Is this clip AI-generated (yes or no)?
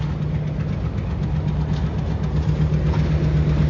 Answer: no